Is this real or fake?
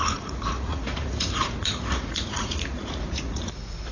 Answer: fake